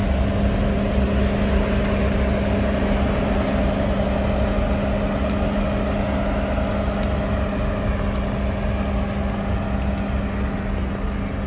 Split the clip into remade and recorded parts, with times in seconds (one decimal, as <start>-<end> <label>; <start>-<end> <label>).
0.0-11.5 recorded